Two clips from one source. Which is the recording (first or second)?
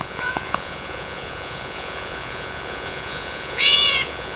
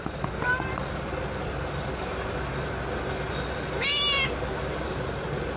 second